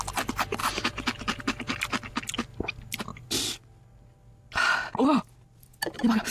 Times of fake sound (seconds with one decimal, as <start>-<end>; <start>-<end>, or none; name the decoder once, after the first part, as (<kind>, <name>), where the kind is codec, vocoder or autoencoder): 0.6-1.4 (vocoder, BigVGAN v2)